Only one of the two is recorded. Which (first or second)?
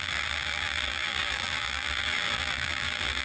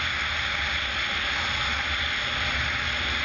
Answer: second